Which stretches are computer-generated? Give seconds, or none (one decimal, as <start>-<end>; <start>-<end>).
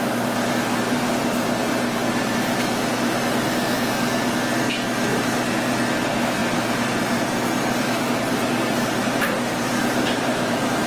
1.6-3.5; 5.1-5.8; 6.4-10.9